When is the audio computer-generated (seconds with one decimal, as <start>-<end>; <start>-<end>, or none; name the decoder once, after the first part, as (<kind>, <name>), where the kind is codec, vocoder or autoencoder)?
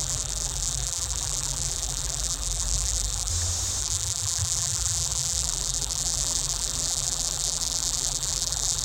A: 0.0-3.3 (vocoder, BigVGAN v2); 3.8-8.8